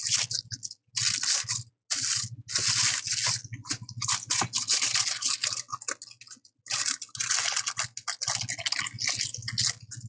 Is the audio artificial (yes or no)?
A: no